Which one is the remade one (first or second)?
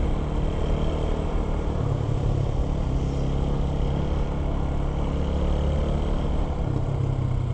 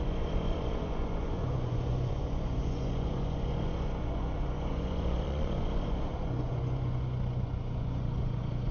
second